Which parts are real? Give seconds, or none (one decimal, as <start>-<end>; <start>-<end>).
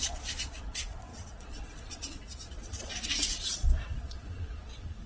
none